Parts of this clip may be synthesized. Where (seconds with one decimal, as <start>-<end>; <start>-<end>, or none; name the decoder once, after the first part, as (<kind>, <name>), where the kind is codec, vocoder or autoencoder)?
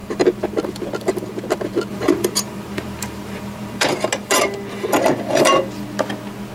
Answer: 0.0-3.9 (vocoder, BigVGAN v2)